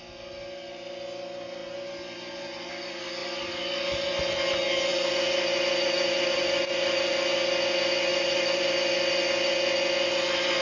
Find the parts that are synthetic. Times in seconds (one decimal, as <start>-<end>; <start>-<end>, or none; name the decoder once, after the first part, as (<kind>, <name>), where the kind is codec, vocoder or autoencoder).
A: 4.9-7.1 (vocoder, BigVGAN v2); 8.1-8.7